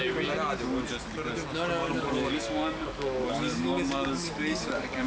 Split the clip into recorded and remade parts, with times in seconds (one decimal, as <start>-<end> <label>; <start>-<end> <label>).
0.0-1.8 recorded; 1.8-5.1 remade